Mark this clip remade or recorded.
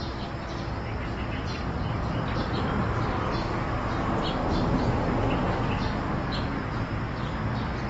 recorded